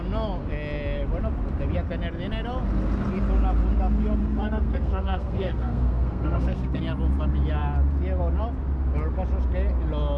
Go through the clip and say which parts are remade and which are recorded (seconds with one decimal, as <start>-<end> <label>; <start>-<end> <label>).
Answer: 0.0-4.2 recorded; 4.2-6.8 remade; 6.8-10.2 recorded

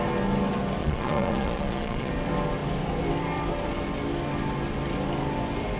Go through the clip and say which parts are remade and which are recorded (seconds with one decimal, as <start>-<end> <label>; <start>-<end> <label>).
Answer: 0.0-0.8 recorded; 0.8-2.1 remade; 2.1-5.8 recorded

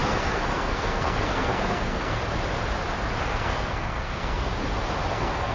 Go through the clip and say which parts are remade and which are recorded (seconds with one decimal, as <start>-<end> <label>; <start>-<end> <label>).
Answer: 0.0-2.2 remade; 2.2-3.2 recorded; 3.2-4.5 remade; 4.5-5.1 recorded; 5.1-5.5 remade

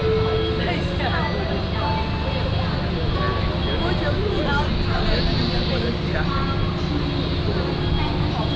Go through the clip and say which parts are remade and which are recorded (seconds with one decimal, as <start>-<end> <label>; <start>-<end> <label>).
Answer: 0.0-8.6 recorded

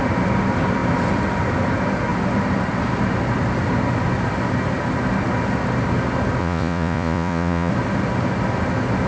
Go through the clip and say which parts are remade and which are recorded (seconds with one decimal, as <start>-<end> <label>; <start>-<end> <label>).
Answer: 0.0-6.4 recorded; 6.4-7.7 remade; 7.7-9.1 recorded

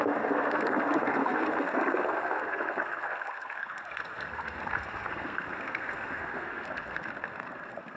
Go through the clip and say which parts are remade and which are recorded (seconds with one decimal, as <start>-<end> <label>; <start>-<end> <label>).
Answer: 0.0-8.0 remade

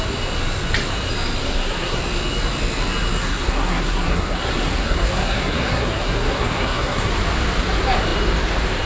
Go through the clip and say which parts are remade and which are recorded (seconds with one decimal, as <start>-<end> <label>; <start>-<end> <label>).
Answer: 0.0-1.4 recorded; 1.4-2.0 remade; 2.0-3.2 recorded; 3.2-7.1 remade; 7.1-8.9 recorded

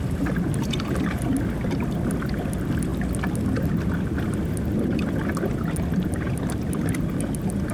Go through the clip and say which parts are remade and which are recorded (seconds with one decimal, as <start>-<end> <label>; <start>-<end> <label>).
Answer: 0.0-7.7 recorded